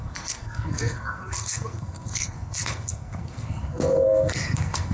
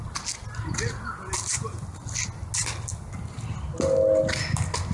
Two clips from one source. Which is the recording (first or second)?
second